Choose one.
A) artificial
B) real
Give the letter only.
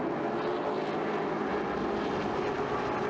B